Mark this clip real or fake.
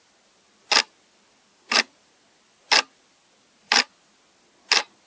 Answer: real